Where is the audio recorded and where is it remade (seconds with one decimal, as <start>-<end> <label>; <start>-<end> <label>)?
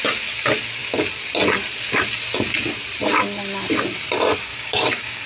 0.0-4.5 recorded; 4.5-5.3 remade